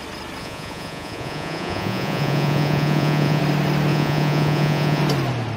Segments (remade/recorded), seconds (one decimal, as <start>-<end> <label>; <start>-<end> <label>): 0.0-0.4 recorded; 0.4-3.4 remade; 3.4-3.9 recorded; 3.9-5.0 remade; 5.0-5.6 recorded